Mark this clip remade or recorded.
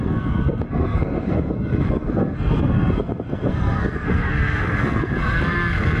remade